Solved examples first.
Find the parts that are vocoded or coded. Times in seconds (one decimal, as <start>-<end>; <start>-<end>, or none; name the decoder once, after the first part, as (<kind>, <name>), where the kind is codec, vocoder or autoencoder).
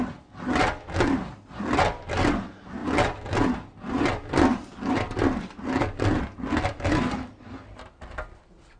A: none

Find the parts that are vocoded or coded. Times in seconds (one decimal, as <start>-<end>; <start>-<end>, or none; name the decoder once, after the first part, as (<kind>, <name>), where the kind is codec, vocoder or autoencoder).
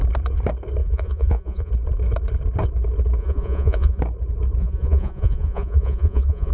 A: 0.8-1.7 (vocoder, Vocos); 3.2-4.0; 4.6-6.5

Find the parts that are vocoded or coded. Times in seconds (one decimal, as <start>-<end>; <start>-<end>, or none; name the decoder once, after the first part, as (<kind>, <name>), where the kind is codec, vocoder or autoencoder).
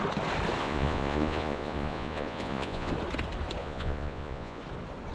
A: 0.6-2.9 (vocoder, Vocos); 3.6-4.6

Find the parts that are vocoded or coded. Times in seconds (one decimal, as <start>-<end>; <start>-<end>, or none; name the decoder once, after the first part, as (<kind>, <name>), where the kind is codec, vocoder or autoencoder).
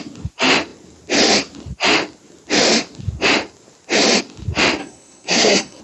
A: 4.8-5.8 (codec, SNAC)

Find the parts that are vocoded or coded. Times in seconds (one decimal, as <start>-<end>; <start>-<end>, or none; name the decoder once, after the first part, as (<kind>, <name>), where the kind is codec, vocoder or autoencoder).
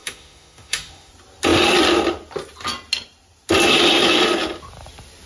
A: 0.0-1.1 (autoencoder, DAC-VAE)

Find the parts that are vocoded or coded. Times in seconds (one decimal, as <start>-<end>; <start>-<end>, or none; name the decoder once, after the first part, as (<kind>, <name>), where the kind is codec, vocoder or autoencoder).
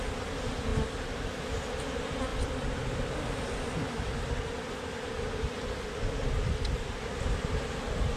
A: 0.7-1.4 (vocoder, BigVGAN v2); 2.3-7.2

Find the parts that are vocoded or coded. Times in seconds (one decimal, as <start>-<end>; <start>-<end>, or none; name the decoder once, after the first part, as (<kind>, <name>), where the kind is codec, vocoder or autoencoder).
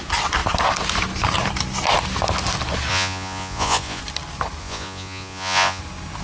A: 2.9-4.0 (vocoder, Vocos); 4.6-5.8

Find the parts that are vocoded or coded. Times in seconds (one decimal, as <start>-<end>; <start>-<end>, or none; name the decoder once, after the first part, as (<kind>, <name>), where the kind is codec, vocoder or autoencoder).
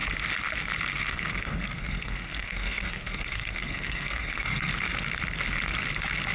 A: 0.9-4.7 (codec, SNAC)